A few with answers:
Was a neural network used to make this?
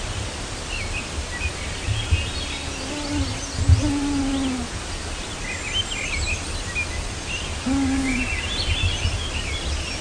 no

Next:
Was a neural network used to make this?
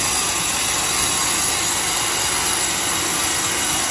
no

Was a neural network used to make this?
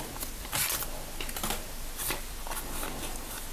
no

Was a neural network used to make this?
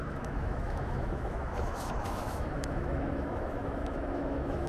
yes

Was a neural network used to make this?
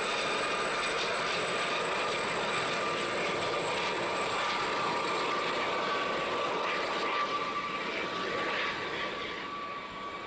no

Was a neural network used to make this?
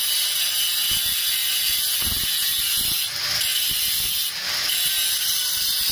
no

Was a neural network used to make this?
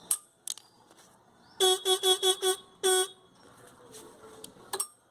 no